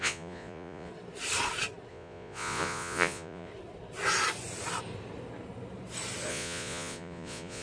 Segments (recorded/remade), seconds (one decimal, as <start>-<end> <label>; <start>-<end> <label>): 0.0-0.9 remade; 0.9-1.9 recorded; 1.9-3.5 remade; 3.5-6.3 recorded; 6.3-7.6 remade

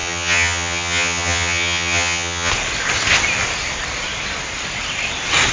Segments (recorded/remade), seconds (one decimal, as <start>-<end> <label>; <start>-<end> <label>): 0.0-2.5 remade; 2.5-5.5 recorded

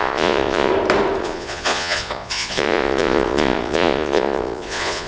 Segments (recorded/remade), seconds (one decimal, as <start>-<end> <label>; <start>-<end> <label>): 0.0-0.7 remade; 0.7-1.2 recorded; 1.2-5.1 remade

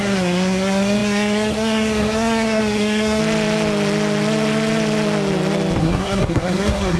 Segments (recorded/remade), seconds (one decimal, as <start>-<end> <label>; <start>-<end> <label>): 0.0-3.2 remade; 3.2-5.8 recorded; 5.8-7.0 remade

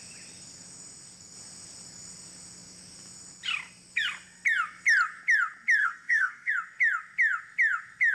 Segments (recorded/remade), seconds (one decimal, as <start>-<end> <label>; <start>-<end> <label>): 0.0-5.8 recorded; 5.8-6.5 remade; 6.5-8.1 recorded